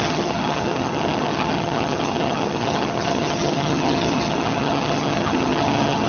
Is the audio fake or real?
fake